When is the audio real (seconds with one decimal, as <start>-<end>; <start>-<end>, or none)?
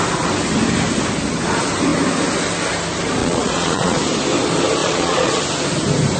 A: 0.0-3.2; 4.0-4.8; 5.4-6.2